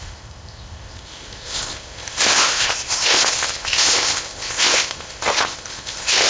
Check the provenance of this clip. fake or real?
fake